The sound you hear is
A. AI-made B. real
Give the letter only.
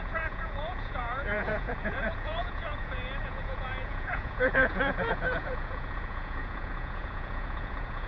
A